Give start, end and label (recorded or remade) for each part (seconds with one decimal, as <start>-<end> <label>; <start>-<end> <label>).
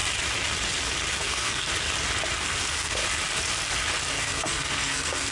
0.0-1.1 recorded; 1.1-1.7 remade; 1.7-2.4 recorded; 2.4-3.0 remade; 3.0-4.1 recorded; 4.1-5.3 remade